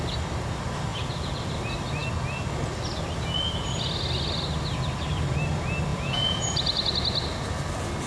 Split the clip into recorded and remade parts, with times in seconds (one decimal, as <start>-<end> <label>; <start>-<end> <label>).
0.0-0.9 recorded; 0.9-1.5 remade; 1.5-5.9 recorded; 5.9-6.4 remade; 6.4-8.1 recorded

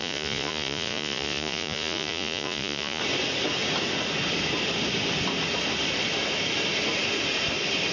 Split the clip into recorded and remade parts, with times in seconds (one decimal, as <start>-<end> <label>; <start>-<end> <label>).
0.0-3.0 remade; 3.0-7.9 recorded

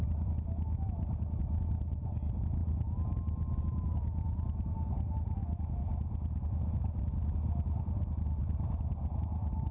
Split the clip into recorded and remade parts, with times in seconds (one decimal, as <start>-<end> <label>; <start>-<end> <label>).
0.0-9.7 recorded

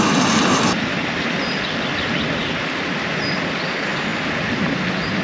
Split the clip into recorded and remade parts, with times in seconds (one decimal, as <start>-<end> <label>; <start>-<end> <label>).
0.0-5.2 recorded

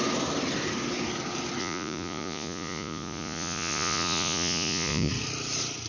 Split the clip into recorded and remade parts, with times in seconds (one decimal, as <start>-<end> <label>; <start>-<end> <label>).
0.0-1.6 recorded; 1.6-5.1 remade; 5.1-5.9 recorded

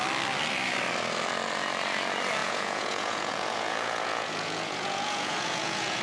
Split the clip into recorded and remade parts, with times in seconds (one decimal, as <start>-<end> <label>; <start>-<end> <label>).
0.0-2.4 recorded; 2.4-6.0 remade